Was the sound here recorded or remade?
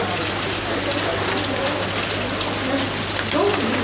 recorded